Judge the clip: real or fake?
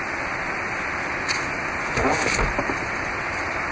real